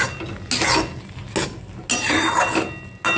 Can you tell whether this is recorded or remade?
recorded